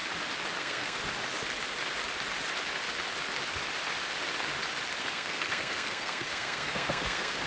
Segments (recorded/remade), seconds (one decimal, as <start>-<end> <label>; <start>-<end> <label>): 0.0-0.6 recorded; 0.6-1.0 remade; 1.0-5.0 recorded; 5.0-7.5 remade